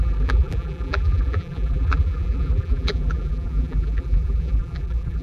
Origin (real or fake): fake